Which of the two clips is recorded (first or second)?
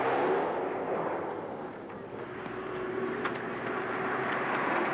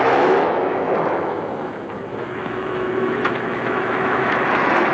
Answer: first